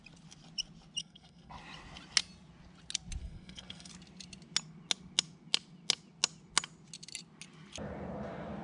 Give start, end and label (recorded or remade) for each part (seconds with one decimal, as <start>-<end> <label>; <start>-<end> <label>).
0.0-1.0 recorded; 1.0-1.5 remade; 1.5-3.2 recorded; 3.2-3.9 remade; 3.9-8.6 recorded

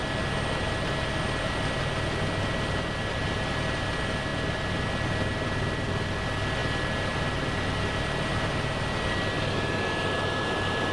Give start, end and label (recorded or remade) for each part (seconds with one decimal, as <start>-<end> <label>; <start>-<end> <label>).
0.0-10.9 recorded

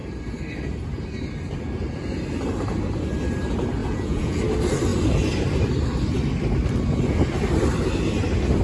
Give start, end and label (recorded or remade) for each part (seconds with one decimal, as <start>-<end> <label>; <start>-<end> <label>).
0.0-3.8 recorded; 3.8-4.4 remade; 4.4-8.6 recorded

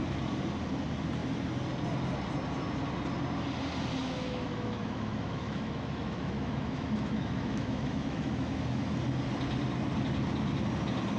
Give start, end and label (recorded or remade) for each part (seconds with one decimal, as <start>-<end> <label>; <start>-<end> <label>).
0.0-4.0 recorded; 4.0-8.8 remade; 8.8-11.2 recorded

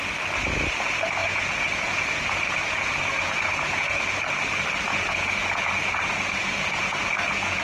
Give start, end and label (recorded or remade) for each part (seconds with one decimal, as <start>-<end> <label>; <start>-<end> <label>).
0.0-1.2 recorded; 1.2-4.0 remade; 4.0-4.9 recorded; 4.9-7.6 remade

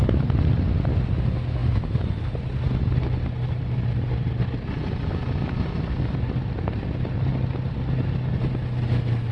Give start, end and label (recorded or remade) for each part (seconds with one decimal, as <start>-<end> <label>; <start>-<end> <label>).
0.0-9.3 recorded

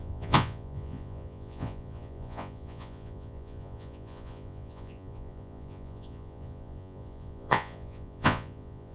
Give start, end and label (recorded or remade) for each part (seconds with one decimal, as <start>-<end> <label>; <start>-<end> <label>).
0.0-8.9 remade